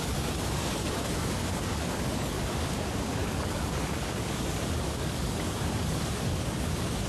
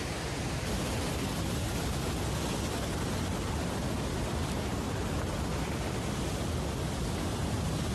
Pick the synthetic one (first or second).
first